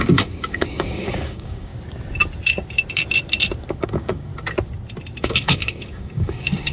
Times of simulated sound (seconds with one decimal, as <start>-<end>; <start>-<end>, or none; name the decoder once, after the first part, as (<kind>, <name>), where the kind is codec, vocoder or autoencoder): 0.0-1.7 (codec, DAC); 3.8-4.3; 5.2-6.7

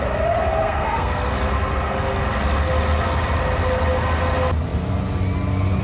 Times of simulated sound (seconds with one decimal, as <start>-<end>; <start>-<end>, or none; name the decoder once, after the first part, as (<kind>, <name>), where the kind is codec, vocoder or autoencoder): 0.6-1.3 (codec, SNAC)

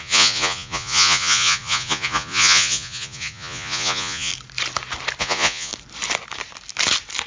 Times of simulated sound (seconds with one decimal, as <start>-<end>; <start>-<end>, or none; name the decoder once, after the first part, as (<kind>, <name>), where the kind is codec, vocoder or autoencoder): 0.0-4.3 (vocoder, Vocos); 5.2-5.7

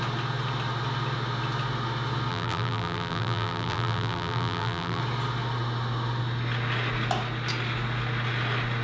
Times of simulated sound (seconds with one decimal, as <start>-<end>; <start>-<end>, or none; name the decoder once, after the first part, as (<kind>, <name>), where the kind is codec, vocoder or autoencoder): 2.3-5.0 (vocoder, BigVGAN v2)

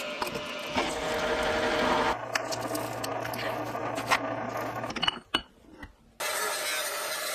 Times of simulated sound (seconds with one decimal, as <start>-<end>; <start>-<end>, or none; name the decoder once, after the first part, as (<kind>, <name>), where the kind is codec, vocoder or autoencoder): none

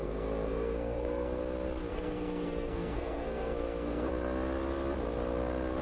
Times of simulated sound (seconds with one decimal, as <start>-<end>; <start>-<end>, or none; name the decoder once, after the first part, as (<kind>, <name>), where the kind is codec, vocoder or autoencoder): 0.0-1.4 (codec, SNAC); 1.9-4.1